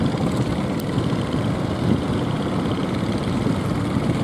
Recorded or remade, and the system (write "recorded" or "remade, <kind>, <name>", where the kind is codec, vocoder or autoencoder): recorded